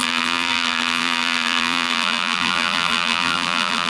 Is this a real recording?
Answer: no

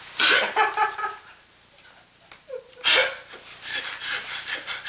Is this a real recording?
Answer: yes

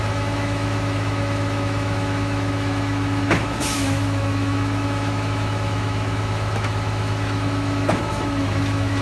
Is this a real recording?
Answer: no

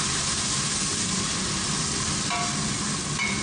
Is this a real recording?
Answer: yes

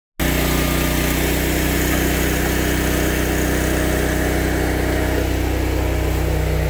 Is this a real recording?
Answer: yes